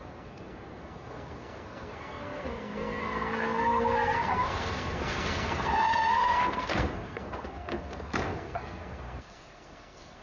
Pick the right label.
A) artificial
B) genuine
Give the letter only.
A